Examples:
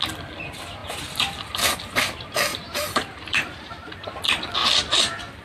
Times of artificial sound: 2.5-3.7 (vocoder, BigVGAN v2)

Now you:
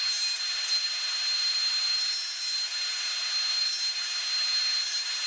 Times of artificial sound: 0.0-5.3 (vocoder, BigVGAN v2)

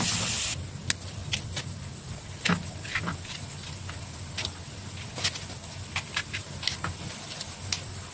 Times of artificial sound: none

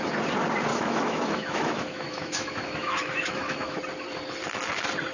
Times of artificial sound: 0.7-3.8 (autoencoder, DAC-VAE)